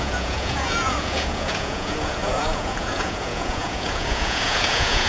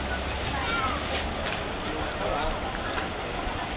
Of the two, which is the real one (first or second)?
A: second